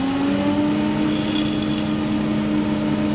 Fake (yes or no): no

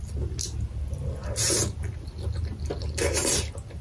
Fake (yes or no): no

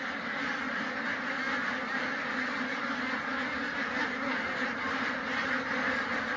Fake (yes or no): no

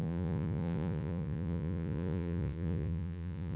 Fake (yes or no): yes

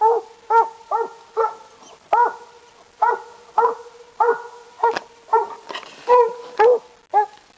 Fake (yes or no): no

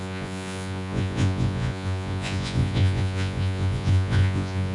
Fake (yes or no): yes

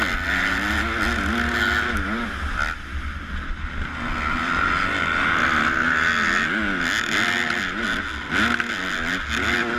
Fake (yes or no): no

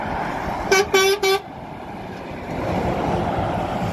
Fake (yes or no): no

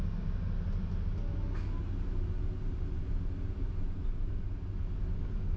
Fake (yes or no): no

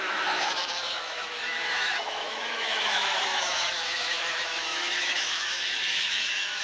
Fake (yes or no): yes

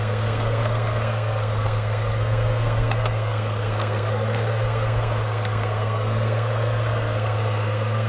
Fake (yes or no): yes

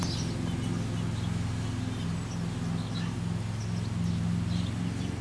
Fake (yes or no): no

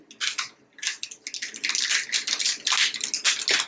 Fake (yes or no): no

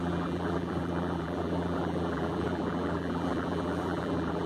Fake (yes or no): yes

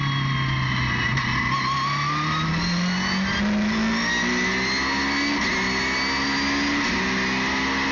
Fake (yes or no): no